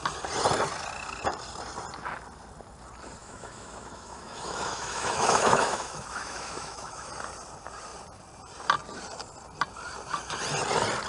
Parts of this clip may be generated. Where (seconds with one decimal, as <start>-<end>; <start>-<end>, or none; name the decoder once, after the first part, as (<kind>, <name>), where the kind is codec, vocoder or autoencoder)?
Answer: 3.2-7.1 (autoencoder, DAC-VAE)